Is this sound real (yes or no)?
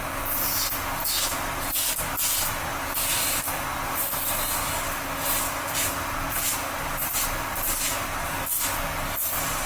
yes